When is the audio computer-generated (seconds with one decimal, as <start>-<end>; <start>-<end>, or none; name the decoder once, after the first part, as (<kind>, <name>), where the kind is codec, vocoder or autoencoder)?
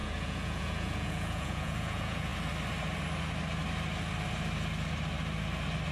0.0-2.3 (vocoder, Vocos)